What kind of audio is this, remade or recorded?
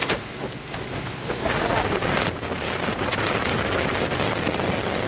recorded